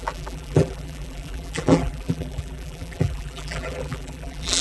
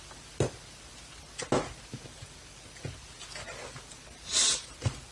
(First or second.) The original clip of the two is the second